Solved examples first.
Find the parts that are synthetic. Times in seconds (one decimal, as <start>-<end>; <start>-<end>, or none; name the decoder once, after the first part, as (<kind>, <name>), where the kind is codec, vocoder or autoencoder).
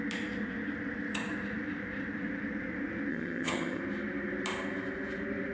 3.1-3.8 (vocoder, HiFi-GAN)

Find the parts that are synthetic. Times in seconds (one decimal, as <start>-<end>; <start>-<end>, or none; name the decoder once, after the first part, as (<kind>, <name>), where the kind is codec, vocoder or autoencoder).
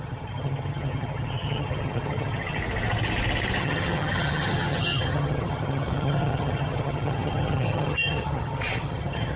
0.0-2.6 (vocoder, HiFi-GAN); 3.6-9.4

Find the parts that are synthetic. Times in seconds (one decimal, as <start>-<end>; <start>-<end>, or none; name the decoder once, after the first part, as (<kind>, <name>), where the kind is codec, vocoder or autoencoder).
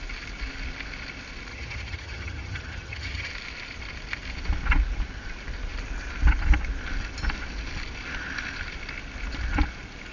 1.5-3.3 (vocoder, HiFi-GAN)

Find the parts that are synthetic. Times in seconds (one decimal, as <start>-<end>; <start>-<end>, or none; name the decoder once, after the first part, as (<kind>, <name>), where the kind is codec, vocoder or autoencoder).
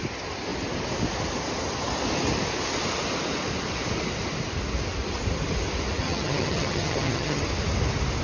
6.0-7.4 (vocoder, HiFi-GAN)